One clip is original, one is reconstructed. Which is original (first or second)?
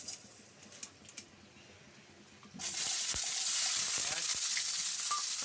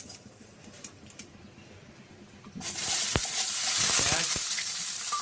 first